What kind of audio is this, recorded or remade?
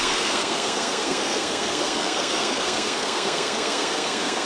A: remade